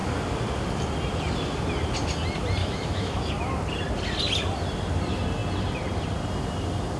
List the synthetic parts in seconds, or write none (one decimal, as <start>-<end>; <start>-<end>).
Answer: 2.6-3.3